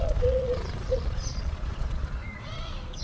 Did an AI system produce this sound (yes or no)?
yes